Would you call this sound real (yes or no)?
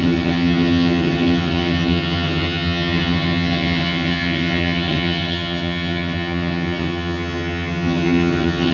no